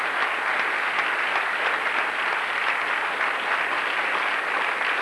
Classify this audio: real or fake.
real